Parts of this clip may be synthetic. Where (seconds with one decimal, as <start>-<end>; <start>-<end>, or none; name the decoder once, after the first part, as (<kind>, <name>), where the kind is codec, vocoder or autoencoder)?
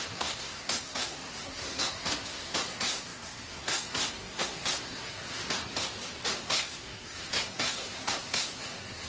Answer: 0.0-5.4 (codec, SNAC); 6.4-9.1